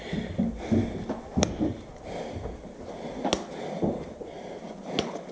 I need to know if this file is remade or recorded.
recorded